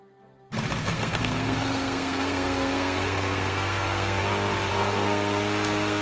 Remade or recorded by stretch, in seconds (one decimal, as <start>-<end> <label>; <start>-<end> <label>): 0.0-0.8 recorded; 0.8-4.2 remade; 4.2-4.7 recorded; 4.7-6.0 remade